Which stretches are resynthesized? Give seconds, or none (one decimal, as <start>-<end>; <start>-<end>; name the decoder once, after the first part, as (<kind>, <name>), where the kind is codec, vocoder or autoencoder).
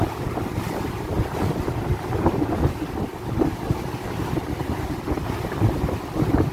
none